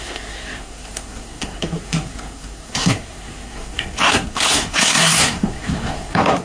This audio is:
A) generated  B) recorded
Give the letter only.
A